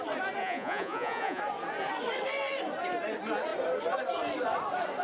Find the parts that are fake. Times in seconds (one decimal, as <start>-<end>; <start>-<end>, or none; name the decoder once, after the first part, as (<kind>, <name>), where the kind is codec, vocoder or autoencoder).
0.4-1.4 (vocoder, Vocos)